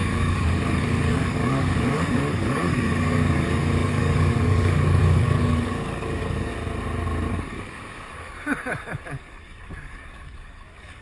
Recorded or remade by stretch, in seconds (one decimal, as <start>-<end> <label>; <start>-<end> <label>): 0.0-6.5 remade; 6.5-7.3 recorded; 7.3-11.0 remade